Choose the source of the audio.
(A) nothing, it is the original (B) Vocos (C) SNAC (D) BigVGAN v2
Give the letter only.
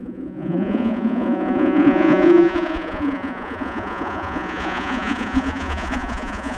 B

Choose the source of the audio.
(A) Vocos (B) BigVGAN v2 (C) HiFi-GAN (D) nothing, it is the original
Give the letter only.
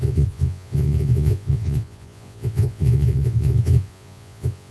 A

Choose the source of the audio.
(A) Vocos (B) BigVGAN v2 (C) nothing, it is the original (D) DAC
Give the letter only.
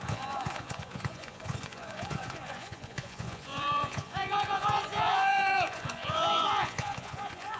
A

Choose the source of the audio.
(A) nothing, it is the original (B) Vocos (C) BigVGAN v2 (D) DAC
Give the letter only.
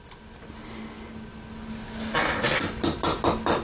A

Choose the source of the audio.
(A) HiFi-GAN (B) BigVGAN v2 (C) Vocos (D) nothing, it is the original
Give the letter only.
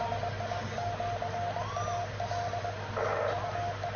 D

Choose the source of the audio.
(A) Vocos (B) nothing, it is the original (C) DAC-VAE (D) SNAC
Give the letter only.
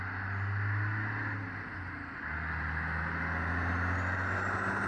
B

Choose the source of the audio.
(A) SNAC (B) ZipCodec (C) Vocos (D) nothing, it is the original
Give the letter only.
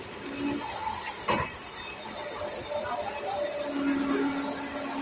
D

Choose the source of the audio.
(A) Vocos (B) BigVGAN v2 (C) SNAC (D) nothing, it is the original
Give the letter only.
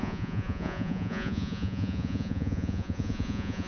A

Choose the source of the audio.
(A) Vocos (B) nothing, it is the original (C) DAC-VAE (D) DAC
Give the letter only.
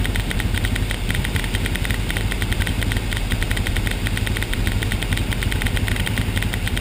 B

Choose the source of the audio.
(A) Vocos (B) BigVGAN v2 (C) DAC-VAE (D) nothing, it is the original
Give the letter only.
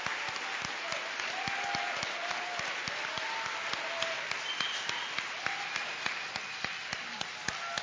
D